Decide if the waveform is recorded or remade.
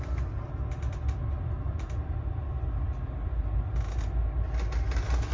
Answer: recorded